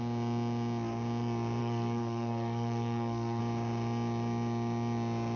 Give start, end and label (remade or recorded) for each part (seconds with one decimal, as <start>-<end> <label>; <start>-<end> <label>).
0.0-1.6 recorded; 1.6-3.4 remade; 3.4-5.4 recorded